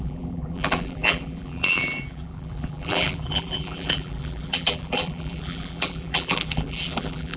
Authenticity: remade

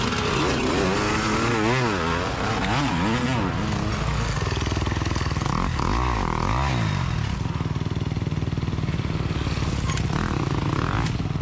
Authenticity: recorded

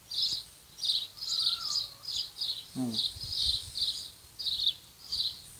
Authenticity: remade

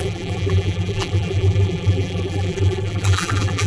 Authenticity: remade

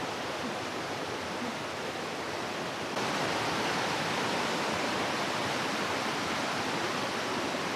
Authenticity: recorded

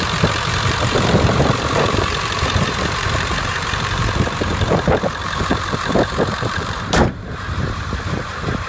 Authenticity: remade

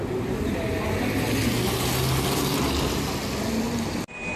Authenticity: recorded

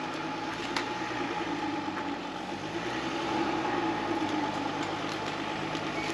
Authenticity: recorded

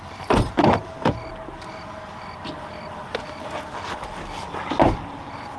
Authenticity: recorded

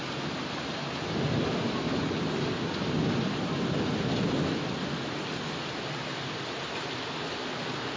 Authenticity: recorded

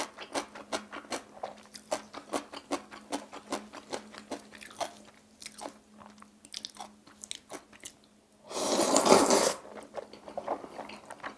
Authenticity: recorded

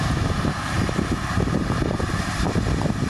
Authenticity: remade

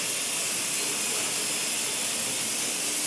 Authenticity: recorded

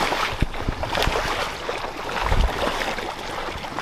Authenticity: recorded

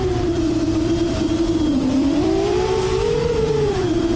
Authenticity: remade